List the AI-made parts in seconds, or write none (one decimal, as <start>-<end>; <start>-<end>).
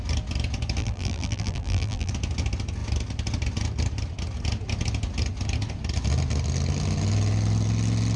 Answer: 0.8-2.1